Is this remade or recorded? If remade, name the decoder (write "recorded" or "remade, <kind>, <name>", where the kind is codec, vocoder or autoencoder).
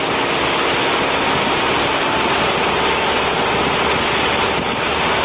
recorded